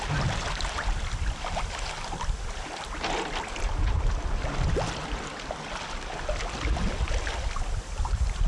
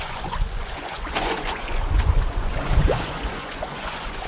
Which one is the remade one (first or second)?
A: second